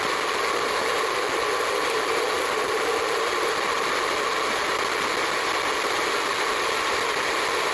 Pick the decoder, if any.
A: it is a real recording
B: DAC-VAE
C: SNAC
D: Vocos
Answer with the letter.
A